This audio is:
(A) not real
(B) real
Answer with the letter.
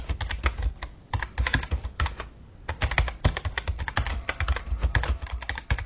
B